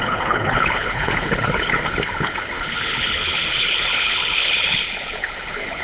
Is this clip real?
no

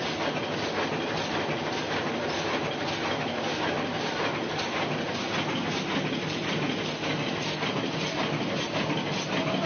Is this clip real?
yes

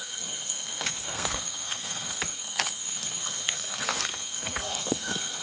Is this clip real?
no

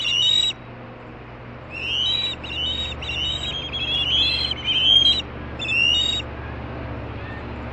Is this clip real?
yes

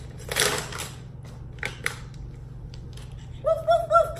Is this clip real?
yes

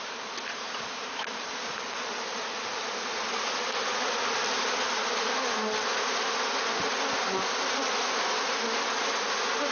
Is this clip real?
yes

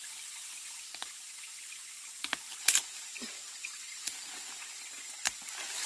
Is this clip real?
yes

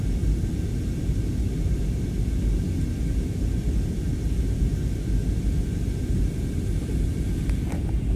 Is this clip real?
yes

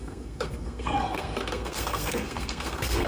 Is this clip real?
no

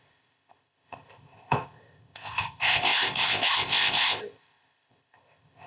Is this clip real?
no